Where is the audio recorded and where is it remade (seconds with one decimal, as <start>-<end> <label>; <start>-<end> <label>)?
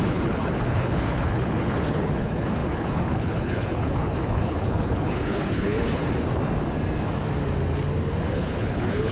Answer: 0.0-6.0 remade; 6.0-8.3 recorded; 8.3-9.1 remade